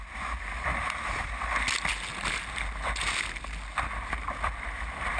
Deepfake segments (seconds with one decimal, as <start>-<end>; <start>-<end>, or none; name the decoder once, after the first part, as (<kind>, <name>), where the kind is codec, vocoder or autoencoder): 0.7-1.3 (vocoder, BigVGAN v2)